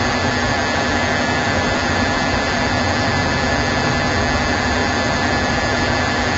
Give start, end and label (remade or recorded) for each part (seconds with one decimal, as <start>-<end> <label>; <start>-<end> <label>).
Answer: 0.0-6.4 recorded